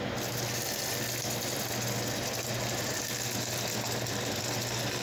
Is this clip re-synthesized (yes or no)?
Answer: no